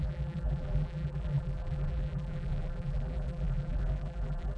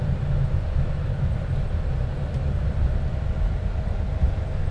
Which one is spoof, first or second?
first